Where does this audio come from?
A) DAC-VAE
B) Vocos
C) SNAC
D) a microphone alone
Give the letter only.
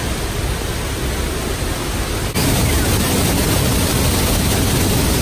D